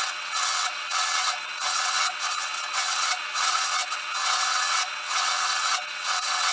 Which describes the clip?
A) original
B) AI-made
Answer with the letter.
B